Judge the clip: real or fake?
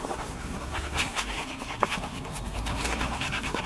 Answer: fake